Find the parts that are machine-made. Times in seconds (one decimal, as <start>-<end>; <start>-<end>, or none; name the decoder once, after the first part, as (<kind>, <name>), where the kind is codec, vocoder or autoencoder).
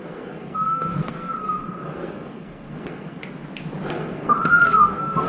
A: 0.0-3.2 (codec, SNAC); 3.9-5.3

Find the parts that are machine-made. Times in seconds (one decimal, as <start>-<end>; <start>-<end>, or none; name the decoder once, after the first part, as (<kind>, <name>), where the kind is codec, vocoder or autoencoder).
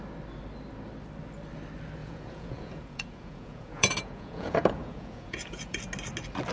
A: 2.0-5.8 (vocoder, Vocos)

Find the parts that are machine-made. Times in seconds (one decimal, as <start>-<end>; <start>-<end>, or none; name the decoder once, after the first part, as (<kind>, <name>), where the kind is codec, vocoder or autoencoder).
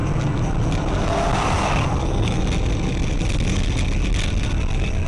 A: 2.0-2.4 (codec, SNAC)